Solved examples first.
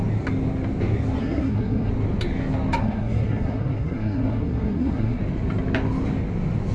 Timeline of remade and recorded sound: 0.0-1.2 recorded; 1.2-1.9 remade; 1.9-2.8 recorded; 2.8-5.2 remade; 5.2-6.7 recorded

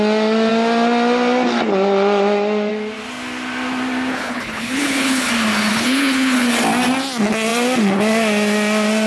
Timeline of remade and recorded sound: 0.0-4.1 recorded; 4.1-5.3 remade; 5.3-5.7 recorded; 5.7-6.5 remade; 6.5-9.1 recorded

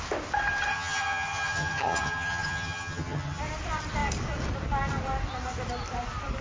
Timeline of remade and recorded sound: 0.0-0.7 recorded; 0.7-3.4 remade; 3.4-6.4 recorded